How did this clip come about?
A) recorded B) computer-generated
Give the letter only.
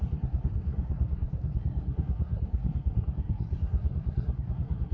B